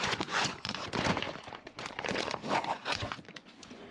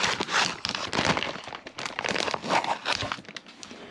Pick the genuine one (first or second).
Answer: second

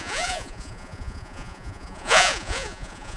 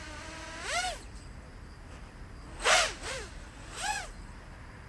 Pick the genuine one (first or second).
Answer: second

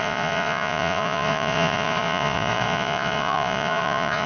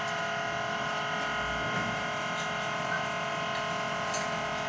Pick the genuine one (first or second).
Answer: second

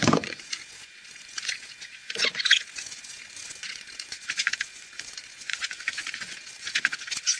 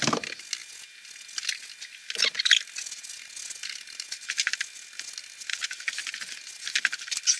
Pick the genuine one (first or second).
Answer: second